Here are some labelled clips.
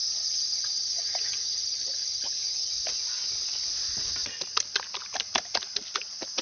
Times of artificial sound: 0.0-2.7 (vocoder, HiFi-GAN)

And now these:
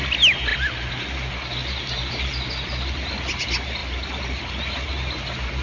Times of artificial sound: none

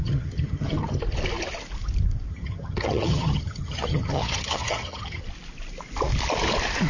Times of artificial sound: 0.0-1.0 (vocoder, HiFi-GAN); 2.3-5.2